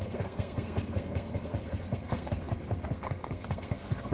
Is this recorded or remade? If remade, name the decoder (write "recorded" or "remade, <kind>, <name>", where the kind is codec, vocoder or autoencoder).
remade, codec, SNAC